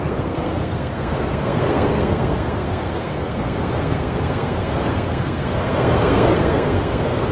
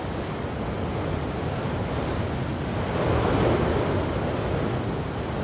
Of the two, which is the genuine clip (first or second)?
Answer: second